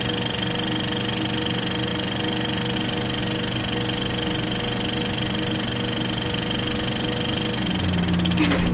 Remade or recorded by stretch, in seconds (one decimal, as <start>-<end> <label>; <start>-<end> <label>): 0.0-8.7 recorded